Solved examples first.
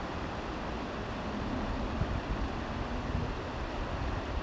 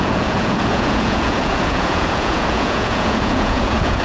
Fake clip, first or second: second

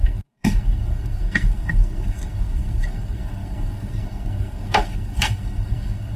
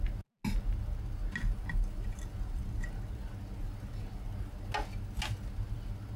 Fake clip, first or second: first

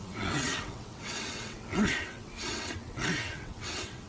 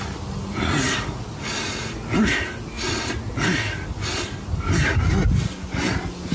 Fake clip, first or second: first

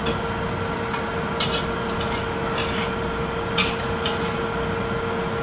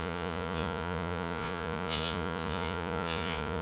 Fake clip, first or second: second